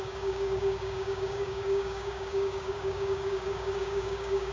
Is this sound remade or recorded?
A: remade